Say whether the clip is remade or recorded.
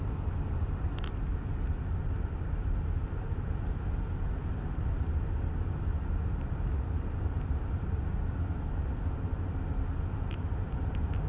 recorded